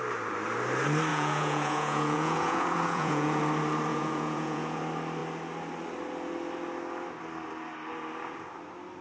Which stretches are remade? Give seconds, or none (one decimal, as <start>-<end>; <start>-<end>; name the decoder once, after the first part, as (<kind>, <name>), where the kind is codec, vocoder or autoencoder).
1.1-3.4 (vocoder, Vocos); 3.9-4.8